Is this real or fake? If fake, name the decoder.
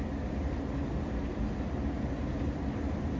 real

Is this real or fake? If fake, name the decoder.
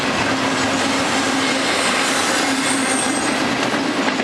real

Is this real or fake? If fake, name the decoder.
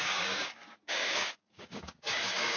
fake, codec, DAC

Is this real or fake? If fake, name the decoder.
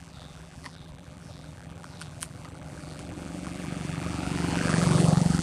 fake, vocoder, BigVGAN v2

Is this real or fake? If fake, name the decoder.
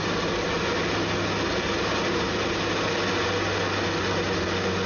real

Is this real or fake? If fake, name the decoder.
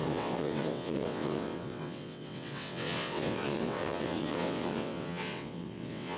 fake, vocoder, WaveNeXt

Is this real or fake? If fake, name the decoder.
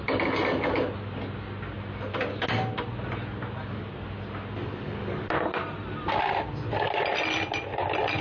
real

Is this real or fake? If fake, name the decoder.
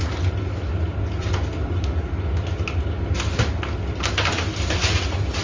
real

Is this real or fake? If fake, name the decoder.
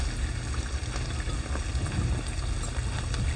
real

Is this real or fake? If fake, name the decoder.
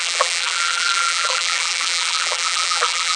fake, vocoder, BigVGAN v2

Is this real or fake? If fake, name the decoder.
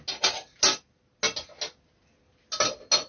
real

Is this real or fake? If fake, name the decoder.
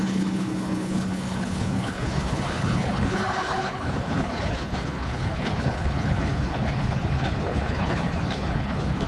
fake, codec, HILCodec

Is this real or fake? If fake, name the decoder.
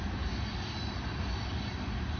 real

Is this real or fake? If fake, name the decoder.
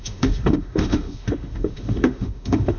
fake, autoencoder, DAC-VAE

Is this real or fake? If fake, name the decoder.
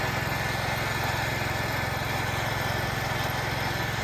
real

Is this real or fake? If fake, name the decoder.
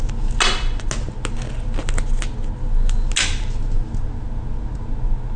real